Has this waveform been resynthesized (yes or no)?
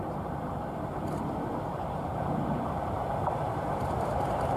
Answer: yes